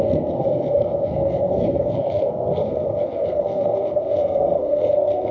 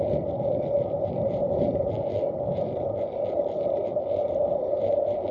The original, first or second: second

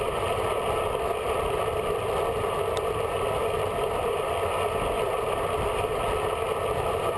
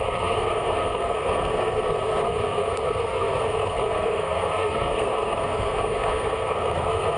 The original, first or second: first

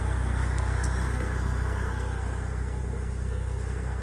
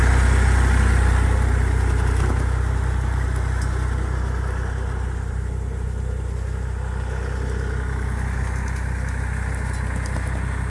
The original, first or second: second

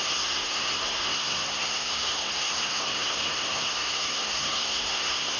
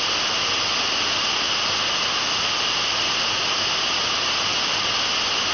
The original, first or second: second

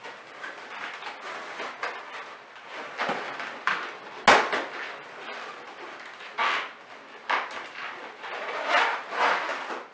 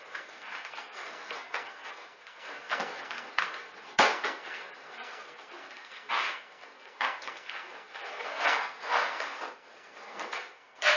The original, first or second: first